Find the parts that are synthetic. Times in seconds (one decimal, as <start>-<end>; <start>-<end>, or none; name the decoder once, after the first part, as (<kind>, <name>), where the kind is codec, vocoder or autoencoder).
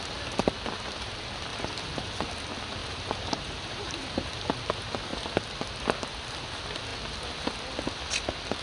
1.5-2.1 (vocoder, BigVGAN v2); 2.8-4.3